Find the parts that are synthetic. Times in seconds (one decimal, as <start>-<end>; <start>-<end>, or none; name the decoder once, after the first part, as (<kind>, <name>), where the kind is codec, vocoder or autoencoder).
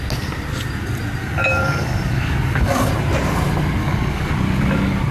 1.2-2.9 (codec, DAC); 3.8-4.3